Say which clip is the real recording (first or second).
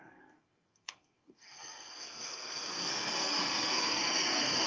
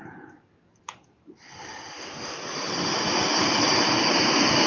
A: second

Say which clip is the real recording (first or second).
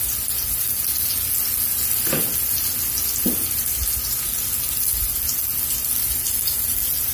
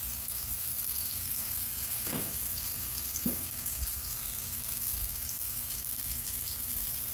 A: first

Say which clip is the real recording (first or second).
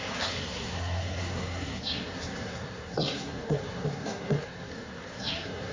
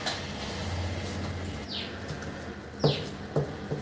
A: second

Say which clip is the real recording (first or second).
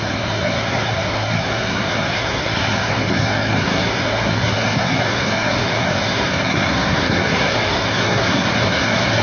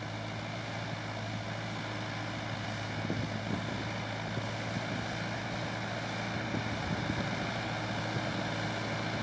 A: second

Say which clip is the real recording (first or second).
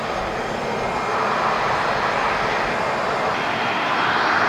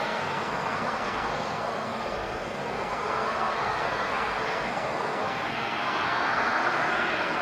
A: first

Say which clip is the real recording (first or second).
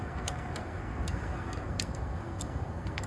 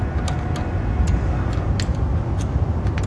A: second